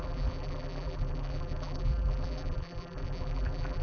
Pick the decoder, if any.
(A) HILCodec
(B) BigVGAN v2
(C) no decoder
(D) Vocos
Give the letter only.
B